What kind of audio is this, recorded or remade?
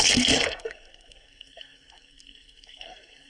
remade